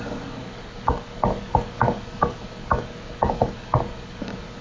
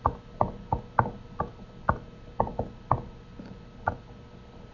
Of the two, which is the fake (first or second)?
first